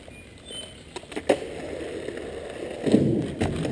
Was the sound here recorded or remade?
recorded